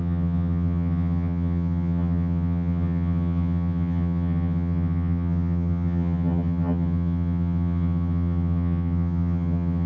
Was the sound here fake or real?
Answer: fake